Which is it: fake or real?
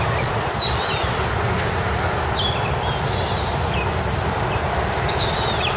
real